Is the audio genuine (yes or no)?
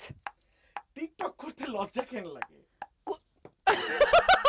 yes